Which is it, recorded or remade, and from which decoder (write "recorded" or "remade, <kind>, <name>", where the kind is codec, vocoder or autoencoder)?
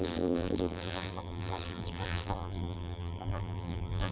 remade, vocoder, BigVGAN v2